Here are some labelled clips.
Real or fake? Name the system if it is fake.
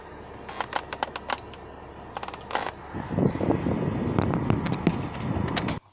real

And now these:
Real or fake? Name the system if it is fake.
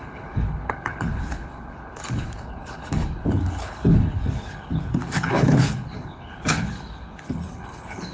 fake, codec, HILCodec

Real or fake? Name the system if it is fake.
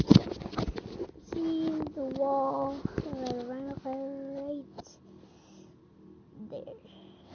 real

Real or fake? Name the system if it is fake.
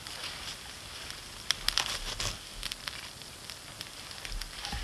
real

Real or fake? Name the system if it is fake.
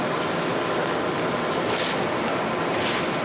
real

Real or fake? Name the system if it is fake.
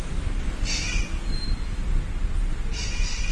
real